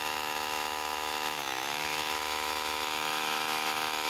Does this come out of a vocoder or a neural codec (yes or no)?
yes